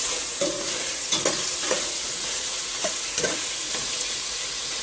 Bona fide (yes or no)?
no